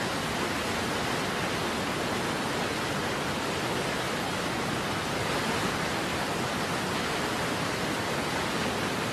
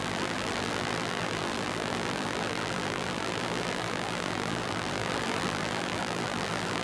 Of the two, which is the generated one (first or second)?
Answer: second